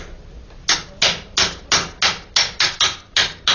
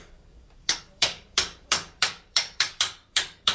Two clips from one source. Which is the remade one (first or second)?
second